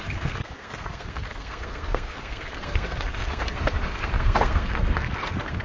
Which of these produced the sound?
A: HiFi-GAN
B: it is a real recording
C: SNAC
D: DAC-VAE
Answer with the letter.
C